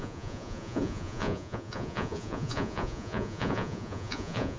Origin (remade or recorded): remade